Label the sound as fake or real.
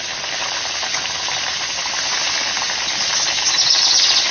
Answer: real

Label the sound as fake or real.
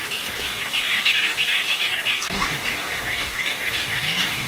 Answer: fake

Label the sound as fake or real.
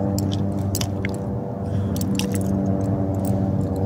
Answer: real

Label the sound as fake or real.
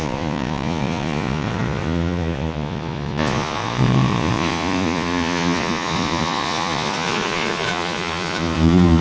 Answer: fake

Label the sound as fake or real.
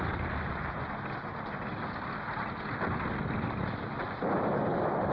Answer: real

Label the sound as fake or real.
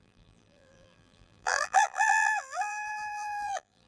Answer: fake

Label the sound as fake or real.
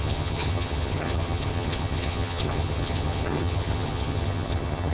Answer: fake